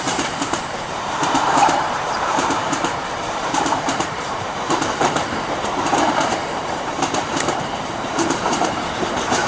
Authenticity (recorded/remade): remade